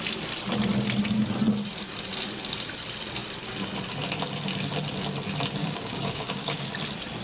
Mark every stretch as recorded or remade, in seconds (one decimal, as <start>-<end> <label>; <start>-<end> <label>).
0.0-5.6 recorded; 5.6-6.7 remade; 6.7-7.2 recorded